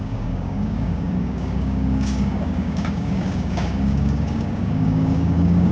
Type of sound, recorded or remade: remade